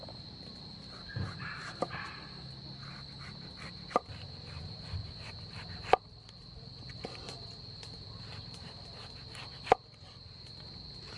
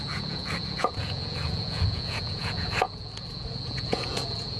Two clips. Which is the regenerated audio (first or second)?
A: second